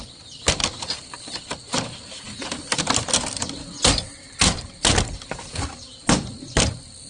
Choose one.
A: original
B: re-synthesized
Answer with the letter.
A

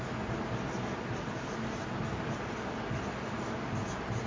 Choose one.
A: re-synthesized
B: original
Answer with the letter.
B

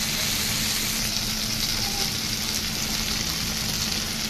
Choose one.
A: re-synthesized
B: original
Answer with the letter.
B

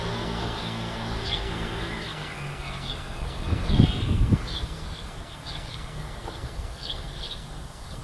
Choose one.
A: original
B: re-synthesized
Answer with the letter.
B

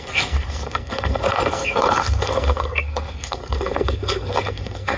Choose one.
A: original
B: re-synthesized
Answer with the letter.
B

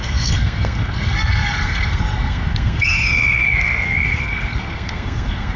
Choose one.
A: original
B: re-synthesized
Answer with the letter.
B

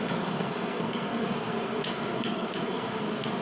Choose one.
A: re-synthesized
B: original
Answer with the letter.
A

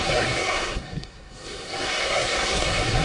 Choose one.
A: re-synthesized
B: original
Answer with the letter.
A